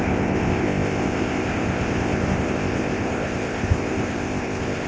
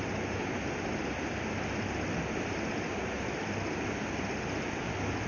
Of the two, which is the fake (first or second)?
first